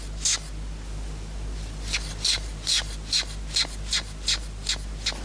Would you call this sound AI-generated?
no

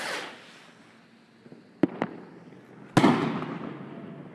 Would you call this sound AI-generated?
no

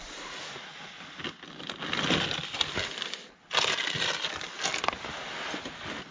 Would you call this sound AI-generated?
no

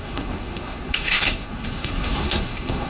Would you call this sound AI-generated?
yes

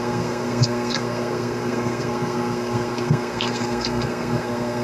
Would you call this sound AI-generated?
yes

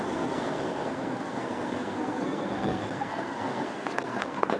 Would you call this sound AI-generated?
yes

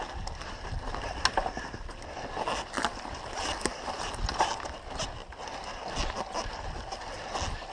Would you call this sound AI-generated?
no